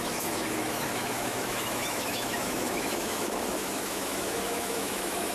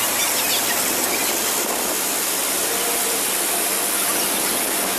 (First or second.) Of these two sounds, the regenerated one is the first